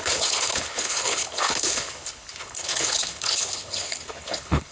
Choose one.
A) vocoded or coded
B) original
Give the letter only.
A